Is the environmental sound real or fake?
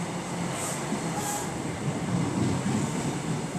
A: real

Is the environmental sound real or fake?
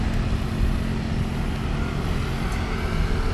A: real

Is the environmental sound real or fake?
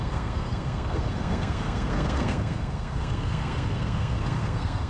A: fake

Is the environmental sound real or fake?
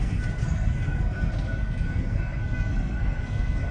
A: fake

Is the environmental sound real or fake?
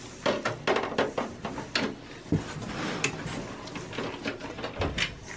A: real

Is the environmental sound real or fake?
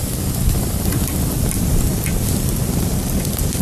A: real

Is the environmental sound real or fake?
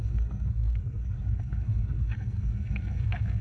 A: fake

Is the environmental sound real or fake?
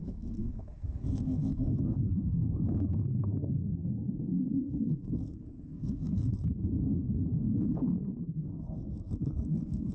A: fake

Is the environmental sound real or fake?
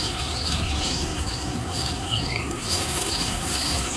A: fake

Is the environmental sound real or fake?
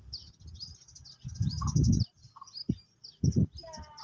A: real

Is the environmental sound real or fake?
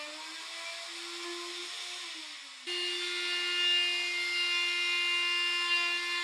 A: real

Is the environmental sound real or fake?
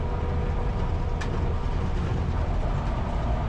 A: real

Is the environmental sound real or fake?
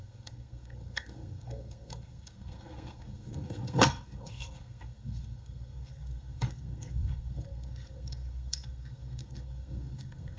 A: fake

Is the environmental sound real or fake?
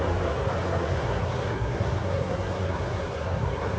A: fake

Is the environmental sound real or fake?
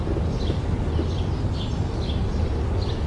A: real